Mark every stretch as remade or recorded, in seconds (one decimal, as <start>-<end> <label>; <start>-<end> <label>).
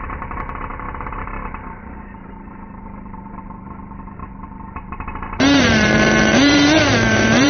0.0-7.5 remade